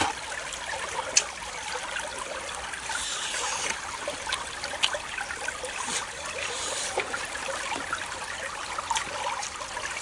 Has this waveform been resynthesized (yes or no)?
no